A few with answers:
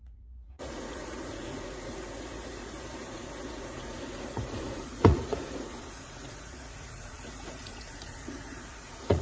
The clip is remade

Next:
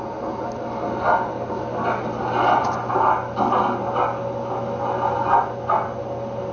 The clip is recorded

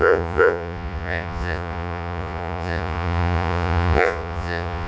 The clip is remade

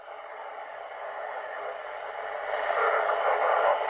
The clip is recorded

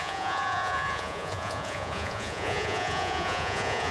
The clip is remade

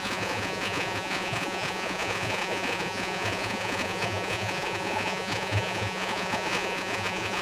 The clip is remade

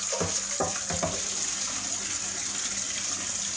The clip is recorded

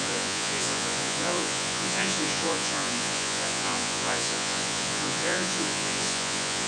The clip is remade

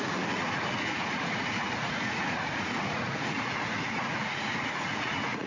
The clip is remade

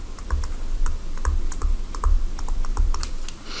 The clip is recorded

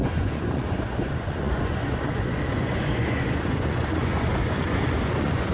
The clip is remade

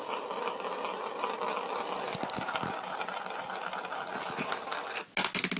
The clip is recorded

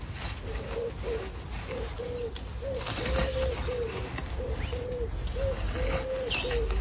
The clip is recorded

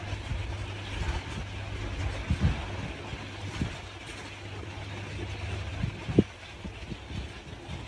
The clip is recorded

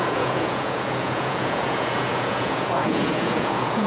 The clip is remade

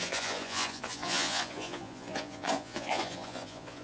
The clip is remade